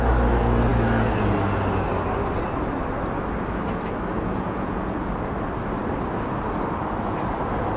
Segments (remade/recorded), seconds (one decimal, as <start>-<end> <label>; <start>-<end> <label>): 0.0-4.1 recorded; 4.1-5.1 remade; 5.1-7.8 recorded